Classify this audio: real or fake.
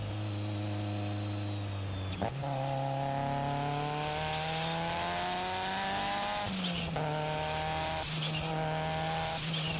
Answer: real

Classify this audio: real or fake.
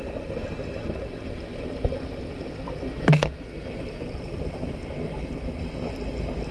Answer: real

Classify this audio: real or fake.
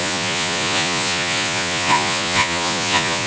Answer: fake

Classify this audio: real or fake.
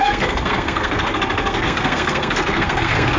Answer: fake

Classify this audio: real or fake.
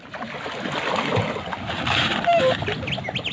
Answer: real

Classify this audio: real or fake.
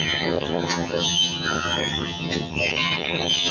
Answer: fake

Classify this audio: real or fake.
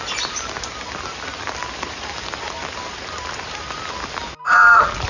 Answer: real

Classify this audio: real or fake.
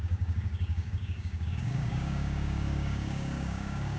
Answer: fake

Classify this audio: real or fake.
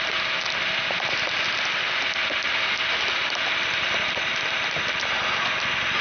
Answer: real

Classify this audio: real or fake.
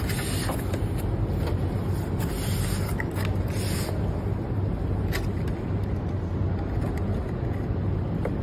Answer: real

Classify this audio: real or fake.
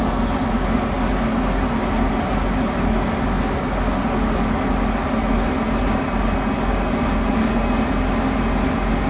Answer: real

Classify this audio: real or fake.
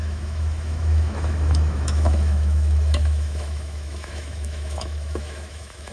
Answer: fake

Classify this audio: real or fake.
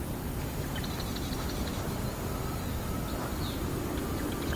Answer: real